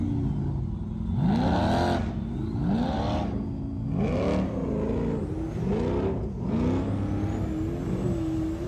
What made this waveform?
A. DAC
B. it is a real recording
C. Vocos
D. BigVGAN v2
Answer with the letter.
B